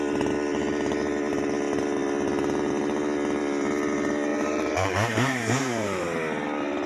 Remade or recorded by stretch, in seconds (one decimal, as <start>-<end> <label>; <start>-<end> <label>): 0.0-4.3 recorded; 4.3-6.0 remade; 6.0-6.9 recorded